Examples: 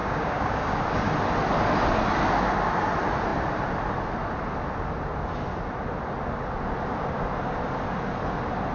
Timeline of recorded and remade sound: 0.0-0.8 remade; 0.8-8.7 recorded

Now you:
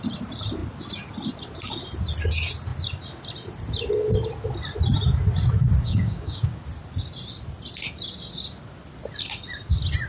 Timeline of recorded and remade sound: 0.0-5.8 recorded; 5.8-6.6 remade; 6.6-10.1 recorded

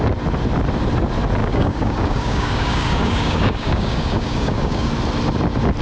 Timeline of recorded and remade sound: 0.0-1.4 recorded; 1.4-4.9 remade; 4.9-5.8 recorded

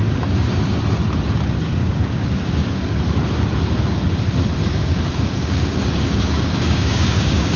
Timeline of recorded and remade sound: 0.0-1.8 recorded; 1.8-3.0 remade; 3.0-4.7 recorded; 4.7-7.6 remade

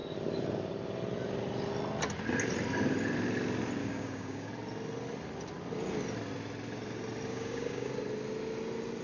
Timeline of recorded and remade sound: 0.0-3.8 recorded; 3.8-4.5 remade; 4.5-7.3 recorded; 7.3-7.9 remade; 7.9-9.0 recorded

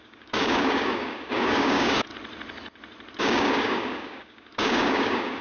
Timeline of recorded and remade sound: 0.0-2.1 remade; 2.1-3.2 recorded; 3.2-5.4 remade